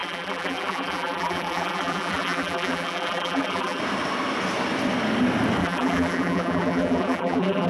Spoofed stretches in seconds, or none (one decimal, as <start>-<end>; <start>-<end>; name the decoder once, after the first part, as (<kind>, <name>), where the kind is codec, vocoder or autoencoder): 0.0-3.8 (vocoder, BigVGAN v2); 5.6-7.7